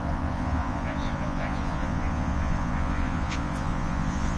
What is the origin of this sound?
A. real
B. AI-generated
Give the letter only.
B